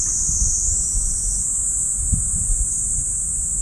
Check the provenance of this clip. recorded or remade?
recorded